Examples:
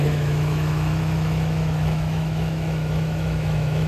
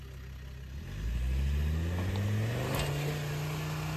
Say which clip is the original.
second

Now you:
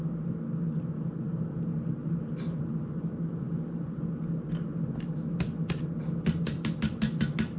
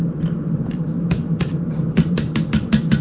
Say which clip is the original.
first